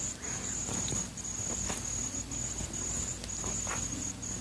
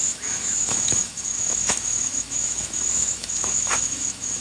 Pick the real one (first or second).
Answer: first